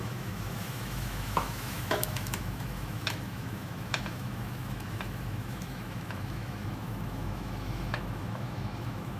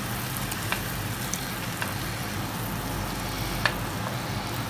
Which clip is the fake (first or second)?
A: first